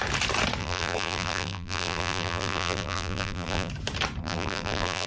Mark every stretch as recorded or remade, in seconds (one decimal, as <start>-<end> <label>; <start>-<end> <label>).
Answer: 0.0-0.6 recorded; 0.6-3.7 remade; 3.7-4.2 recorded; 4.2-5.1 remade